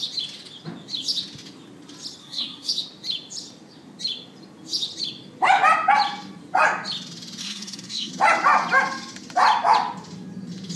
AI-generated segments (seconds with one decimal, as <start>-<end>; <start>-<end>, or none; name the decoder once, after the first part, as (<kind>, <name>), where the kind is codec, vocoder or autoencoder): 2.2-2.7 (codec, SNAC); 7.4-8.1